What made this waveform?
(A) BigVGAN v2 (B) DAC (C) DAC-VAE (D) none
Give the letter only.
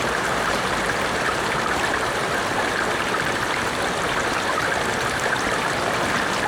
A